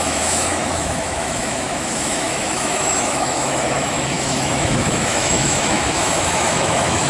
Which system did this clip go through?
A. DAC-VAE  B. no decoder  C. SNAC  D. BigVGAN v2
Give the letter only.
A